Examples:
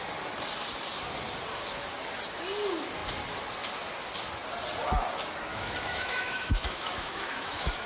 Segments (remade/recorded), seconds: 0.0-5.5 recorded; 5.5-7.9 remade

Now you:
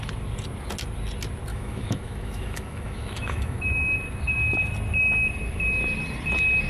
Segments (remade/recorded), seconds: 0.0-1.5 recorded; 1.5-3.6 remade; 3.6-6.7 recorded

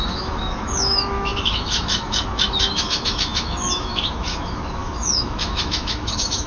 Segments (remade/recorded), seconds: 0.0-6.5 remade